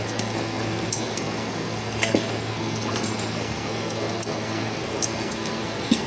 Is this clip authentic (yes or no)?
no